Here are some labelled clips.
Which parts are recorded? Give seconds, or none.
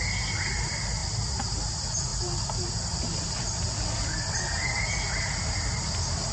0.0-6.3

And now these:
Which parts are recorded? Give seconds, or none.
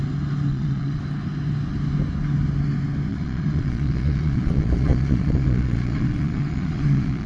0.0-0.5; 1.0-3.1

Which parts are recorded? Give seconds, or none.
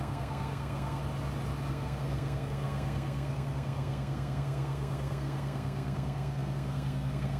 1.0-1.7